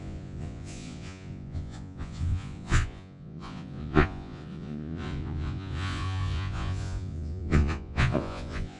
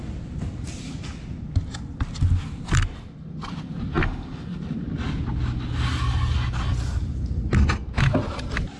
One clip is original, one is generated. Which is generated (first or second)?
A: first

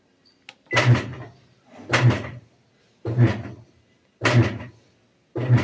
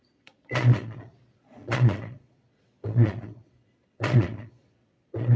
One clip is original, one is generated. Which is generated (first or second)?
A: second